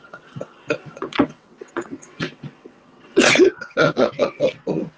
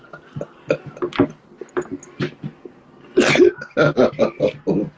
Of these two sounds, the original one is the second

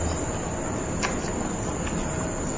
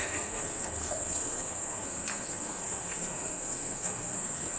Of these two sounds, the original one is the first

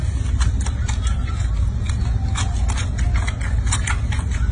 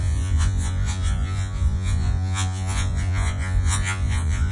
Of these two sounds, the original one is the first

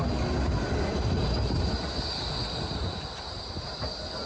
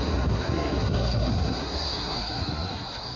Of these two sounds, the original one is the first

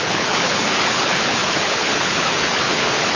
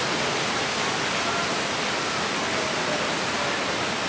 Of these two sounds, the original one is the second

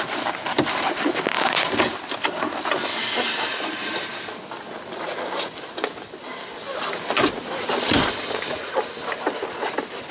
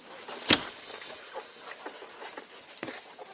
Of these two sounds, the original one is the second